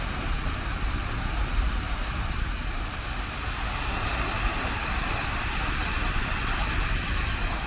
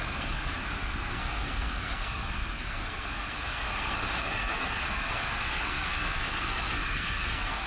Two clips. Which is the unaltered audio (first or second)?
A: first